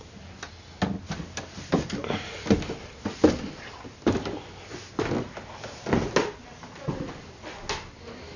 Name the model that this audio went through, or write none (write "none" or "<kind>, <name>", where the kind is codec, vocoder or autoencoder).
none